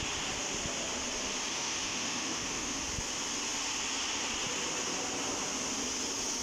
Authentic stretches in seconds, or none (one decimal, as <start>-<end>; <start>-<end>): 0.0-1.5; 2.8-6.4